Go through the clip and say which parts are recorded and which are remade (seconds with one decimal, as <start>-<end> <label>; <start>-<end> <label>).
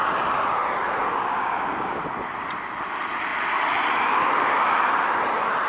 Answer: 0.0-1.1 recorded; 1.1-2.0 remade; 2.0-5.7 recorded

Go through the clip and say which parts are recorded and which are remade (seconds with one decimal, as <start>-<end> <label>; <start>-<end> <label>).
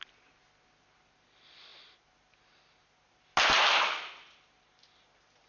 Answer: 0.0-5.5 recorded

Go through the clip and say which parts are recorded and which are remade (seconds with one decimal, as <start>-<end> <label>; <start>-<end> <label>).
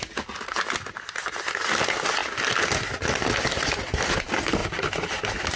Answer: 0.0-5.6 recorded